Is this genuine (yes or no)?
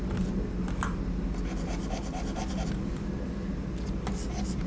yes